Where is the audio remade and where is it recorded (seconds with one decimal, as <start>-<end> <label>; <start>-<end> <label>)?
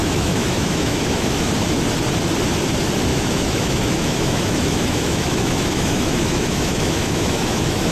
0.0-1.5 remade; 1.5-3.1 recorded; 3.1-7.9 remade